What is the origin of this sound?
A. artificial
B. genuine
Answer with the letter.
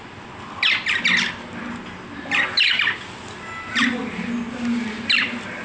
B